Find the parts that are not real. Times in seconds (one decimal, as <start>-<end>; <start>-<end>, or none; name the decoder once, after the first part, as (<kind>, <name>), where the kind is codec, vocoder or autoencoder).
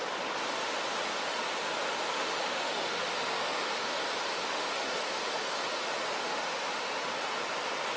2.1-4.0 (autoencoder, DAC-VAE); 4.4-4.9; 6.2-6.9